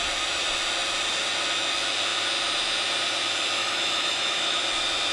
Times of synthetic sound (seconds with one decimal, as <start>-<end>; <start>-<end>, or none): 3.6-4.6